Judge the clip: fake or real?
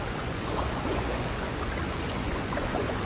fake